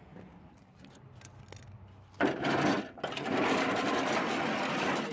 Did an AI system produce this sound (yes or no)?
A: no